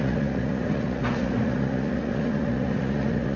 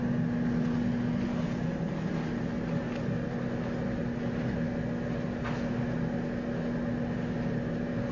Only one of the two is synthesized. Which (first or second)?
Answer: first